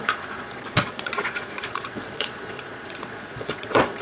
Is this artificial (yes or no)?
yes